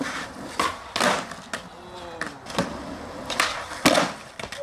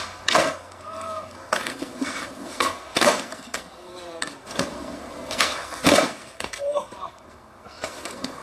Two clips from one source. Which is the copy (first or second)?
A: second